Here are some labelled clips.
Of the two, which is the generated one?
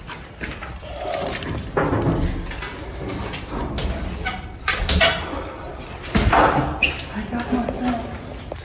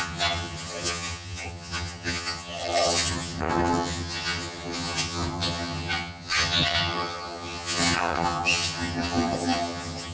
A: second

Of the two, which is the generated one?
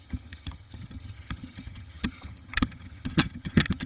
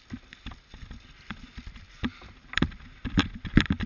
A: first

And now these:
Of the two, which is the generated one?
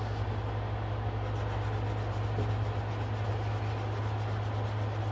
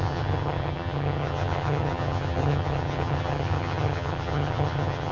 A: second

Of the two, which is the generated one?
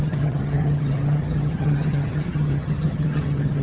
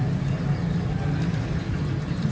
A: first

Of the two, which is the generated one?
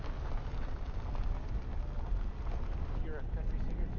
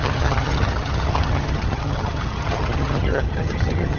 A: second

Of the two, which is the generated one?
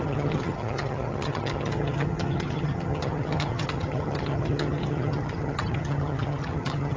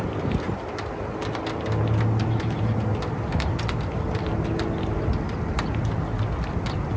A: first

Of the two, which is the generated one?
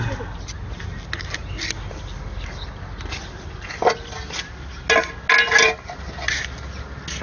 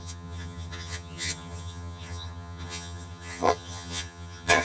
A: second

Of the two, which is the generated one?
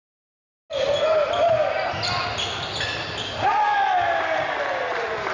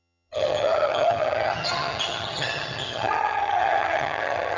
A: second